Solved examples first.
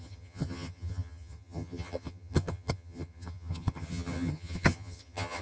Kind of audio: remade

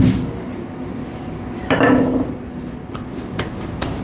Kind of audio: recorded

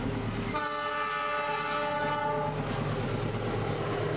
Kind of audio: recorded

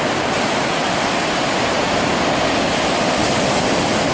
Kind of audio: recorded